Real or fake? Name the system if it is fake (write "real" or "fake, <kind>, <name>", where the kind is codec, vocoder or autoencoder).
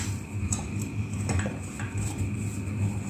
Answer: real